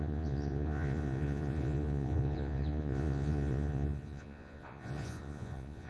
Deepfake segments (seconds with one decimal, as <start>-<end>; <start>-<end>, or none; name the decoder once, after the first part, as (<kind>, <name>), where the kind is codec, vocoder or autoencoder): 0.0-5.9 (vocoder, Vocos)